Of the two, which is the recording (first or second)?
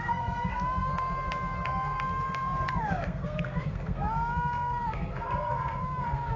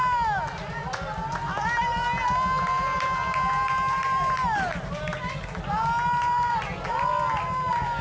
second